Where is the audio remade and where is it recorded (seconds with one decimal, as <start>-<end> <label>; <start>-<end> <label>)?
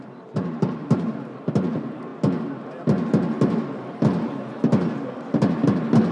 0.0-2.1 remade; 2.1-6.1 recorded